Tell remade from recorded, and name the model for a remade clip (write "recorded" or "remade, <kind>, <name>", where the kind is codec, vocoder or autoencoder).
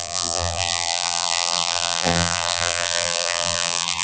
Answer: remade, vocoder, BigVGAN v2